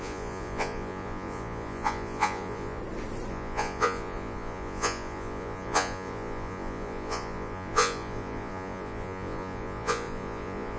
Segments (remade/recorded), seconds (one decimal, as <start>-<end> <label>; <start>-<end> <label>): 0.0-2.8 remade; 2.8-3.3 recorded; 3.3-10.8 remade